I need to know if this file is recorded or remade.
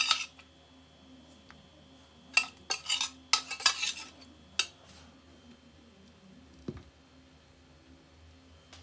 recorded